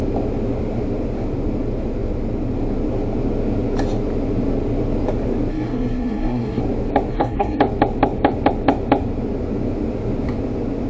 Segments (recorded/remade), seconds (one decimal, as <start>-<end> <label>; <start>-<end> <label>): 0.0-5.5 recorded; 5.5-6.6 remade; 6.6-7.1 recorded; 7.1-7.6 remade; 7.6-10.9 recorded